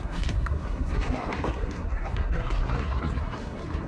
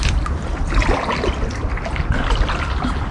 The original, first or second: second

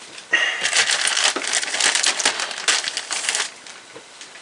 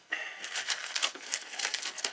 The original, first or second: first